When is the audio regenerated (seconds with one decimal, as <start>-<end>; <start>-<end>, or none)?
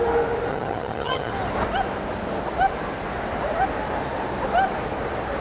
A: 0.5-1.3